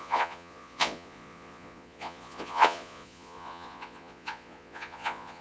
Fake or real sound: fake